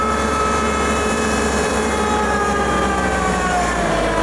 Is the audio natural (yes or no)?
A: no